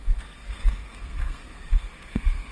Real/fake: fake